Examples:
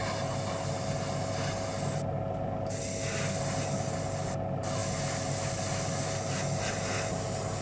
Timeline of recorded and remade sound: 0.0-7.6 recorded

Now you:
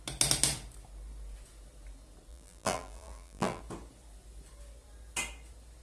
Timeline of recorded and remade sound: 0.0-2.3 recorded; 2.3-3.6 remade; 3.6-5.8 recorded